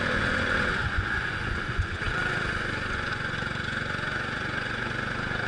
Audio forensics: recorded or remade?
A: remade